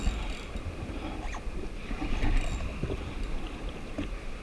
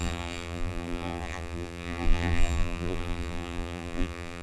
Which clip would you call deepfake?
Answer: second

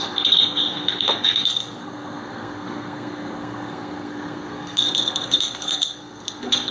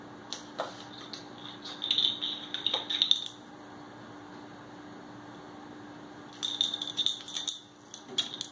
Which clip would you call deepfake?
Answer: first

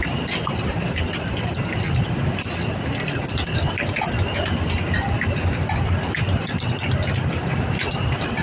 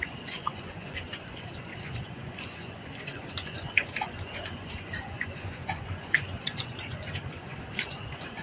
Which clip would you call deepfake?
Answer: second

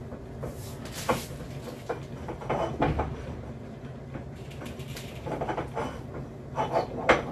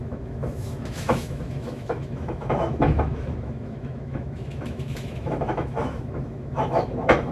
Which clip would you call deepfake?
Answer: second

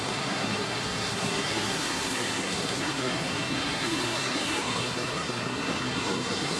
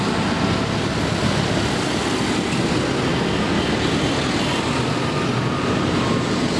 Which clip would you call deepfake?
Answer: first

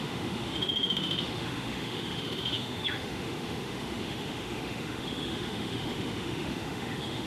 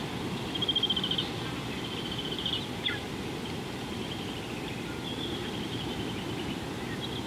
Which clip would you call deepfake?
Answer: first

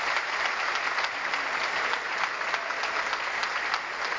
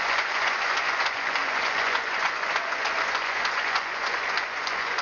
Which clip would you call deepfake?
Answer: second